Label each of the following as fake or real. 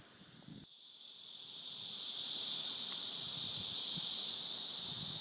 real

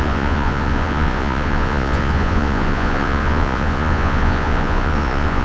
fake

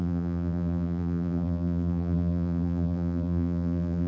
fake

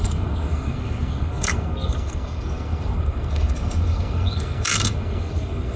fake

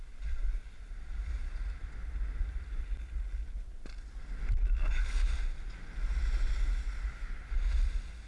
real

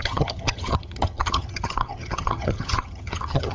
fake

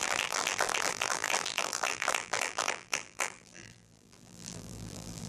fake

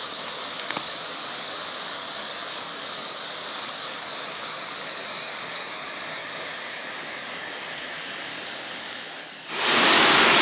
fake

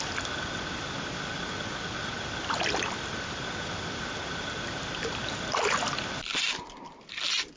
real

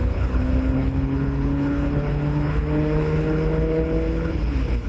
fake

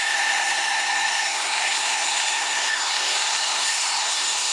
fake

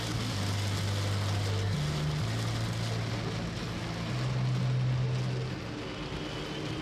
real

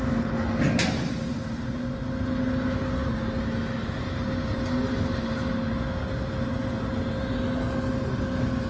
real